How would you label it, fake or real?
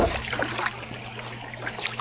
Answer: real